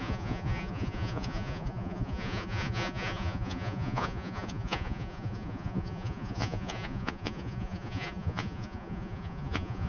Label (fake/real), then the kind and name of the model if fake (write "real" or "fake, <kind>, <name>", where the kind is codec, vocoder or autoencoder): fake, vocoder, Vocos